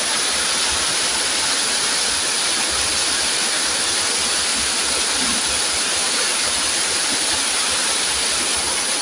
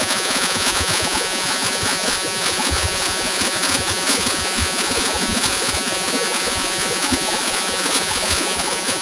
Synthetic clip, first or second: second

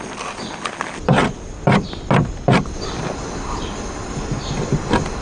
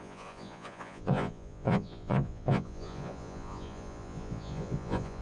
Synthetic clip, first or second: second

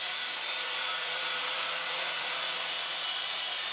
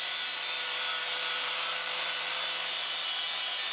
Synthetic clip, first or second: first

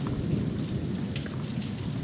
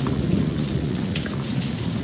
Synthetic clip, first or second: second